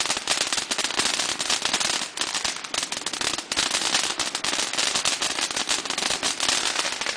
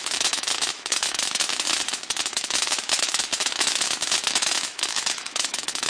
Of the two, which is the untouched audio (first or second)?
first